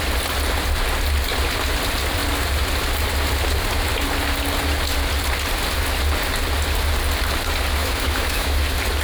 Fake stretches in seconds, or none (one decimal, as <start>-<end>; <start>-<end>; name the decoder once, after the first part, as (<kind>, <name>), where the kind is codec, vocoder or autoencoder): 7.8-8.6 (autoencoder, DAC-VAE)